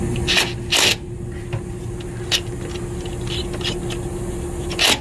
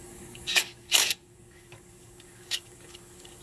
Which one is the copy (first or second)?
second